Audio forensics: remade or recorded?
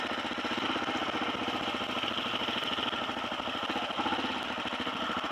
recorded